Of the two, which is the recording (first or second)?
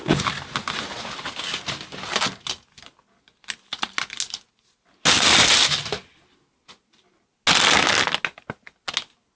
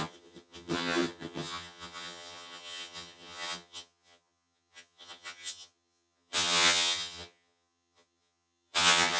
first